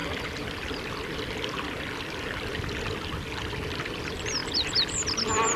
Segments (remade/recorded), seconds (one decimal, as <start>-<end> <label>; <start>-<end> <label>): 0.0-5.6 recorded